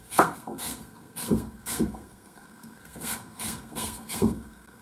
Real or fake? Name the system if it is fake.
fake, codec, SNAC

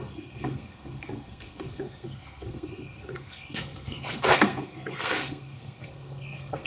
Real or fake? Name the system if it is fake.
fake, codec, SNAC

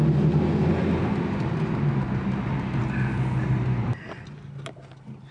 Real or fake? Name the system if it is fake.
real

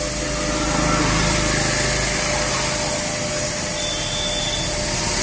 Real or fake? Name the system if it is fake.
real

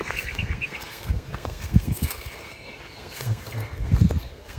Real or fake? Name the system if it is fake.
fake, codec, SNAC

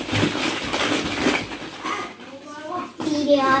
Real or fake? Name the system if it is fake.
real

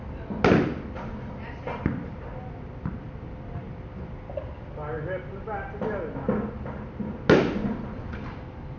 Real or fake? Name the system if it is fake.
real